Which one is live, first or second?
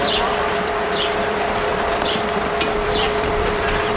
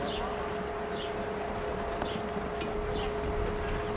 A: second